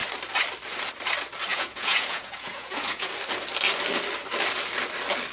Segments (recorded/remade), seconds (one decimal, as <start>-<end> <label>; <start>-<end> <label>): 0.0-1.5 recorded; 1.5-3.1 remade; 3.1-5.3 recorded